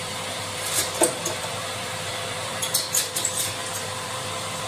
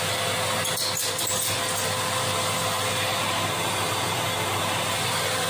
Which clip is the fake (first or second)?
first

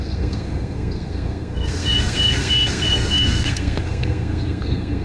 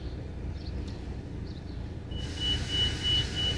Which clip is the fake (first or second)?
first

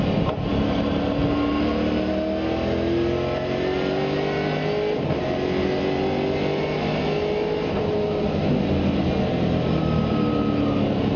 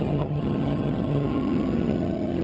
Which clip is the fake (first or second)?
second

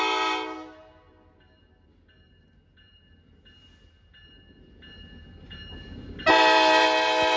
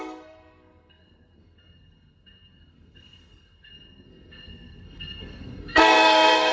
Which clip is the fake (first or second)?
second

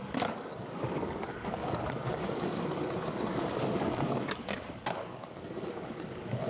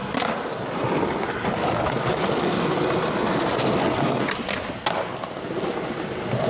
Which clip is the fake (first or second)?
first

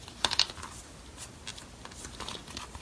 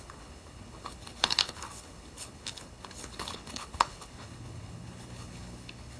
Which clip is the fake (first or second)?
second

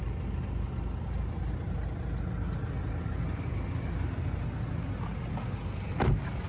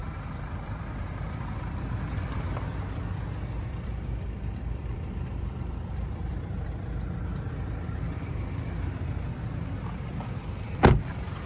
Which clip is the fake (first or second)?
second